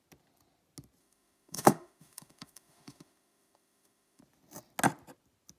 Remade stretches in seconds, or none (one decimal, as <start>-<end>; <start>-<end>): 1.0-4.2